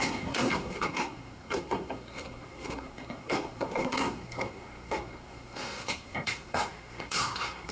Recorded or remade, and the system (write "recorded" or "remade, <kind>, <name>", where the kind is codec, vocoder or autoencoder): remade, codec, SNAC